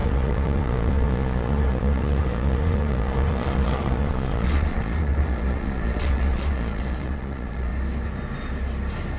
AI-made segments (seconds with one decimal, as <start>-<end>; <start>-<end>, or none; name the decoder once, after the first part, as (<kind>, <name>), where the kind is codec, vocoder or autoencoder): 0.0-7.7 (vocoder, Vocos)